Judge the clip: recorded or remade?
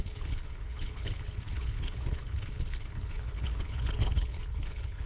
remade